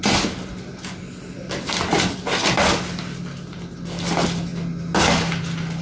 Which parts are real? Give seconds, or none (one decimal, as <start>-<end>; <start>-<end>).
0.0-5.8